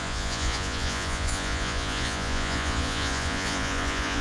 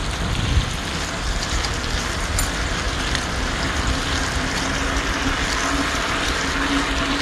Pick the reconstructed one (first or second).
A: first